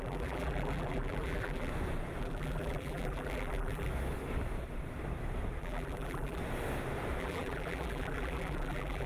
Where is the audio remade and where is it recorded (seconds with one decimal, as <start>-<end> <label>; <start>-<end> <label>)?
0.0-1.7 remade; 1.7-2.2 recorded; 2.2-3.9 remade; 3.9-5.6 recorded; 5.6-6.4 remade; 6.4-7.2 recorded; 7.2-9.1 remade